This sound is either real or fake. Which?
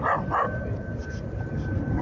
real